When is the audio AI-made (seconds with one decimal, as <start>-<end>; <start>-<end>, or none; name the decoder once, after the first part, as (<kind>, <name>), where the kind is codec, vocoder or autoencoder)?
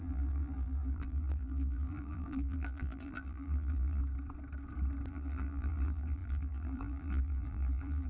0.0-4.0 (vocoder, BigVGAN v2); 5.1-8.1